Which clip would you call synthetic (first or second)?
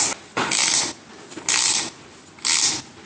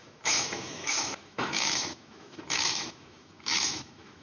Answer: second